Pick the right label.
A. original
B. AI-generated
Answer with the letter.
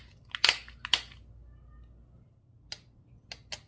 A